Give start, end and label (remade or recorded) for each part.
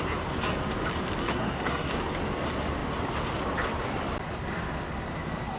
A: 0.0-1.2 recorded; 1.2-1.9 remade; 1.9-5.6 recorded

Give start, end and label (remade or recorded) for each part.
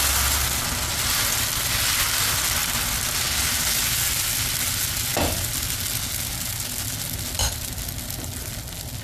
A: 0.0-9.0 recorded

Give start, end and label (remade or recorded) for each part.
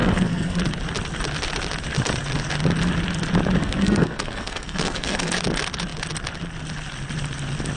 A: 0.0-0.6 remade; 0.6-3.6 recorded; 3.6-5.3 remade; 5.3-7.8 recorded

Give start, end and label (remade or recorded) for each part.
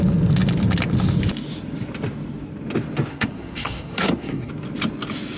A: 0.0-3.1 recorded; 3.1-4.5 remade; 4.5-5.4 recorded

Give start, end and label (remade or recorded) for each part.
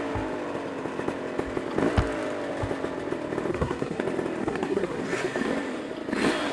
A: 0.0-3.5 recorded; 3.5-4.0 remade; 4.0-4.4 recorded; 4.4-5.0 remade; 5.0-6.5 recorded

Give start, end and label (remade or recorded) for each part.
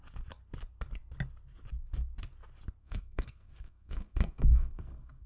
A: 0.0-2.8 recorded; 2.8-5.3 remade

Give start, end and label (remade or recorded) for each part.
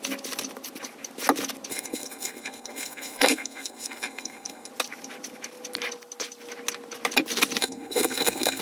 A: 0.0-1.7 recorded; 1.7-4.7 remade; 4.7-7.6 recorded; 7.6-8.6 remade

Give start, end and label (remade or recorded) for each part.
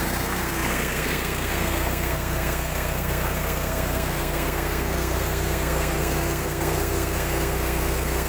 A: 0.0-8.3 remade